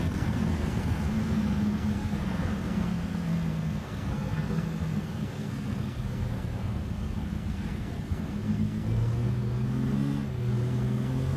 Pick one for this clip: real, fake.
fake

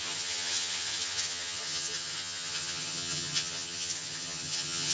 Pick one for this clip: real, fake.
fake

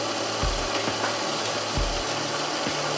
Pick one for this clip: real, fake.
real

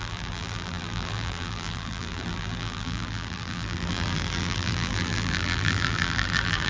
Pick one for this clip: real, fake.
fake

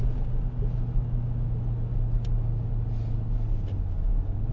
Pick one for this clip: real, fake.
real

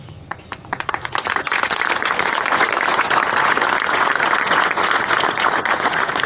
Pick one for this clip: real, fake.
fake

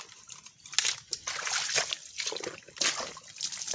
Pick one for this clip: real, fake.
real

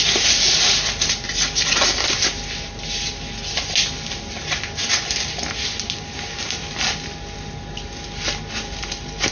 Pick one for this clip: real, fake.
real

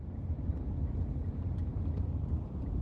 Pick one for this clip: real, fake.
real